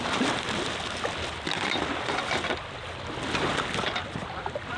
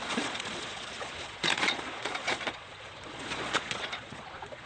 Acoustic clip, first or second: first